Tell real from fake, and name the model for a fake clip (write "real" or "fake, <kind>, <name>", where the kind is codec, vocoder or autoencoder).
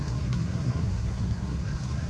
fake, codec, SNAC